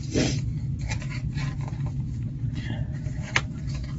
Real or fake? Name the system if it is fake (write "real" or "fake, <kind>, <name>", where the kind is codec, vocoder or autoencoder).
fake, vocoder, BigVGAN v2